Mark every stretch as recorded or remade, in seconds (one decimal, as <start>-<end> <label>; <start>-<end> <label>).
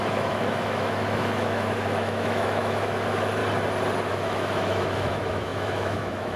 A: 0.0-3.4 remade; 3.4-4.1 recorded; 4.1-6.4 remade